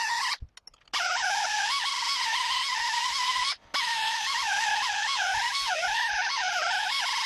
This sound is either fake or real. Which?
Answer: real